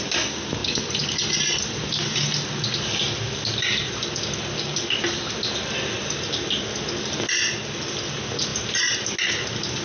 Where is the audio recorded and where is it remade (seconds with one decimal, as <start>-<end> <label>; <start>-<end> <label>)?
0.0-9.8 recorded